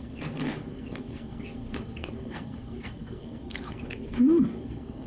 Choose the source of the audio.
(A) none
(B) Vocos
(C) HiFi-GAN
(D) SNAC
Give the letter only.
D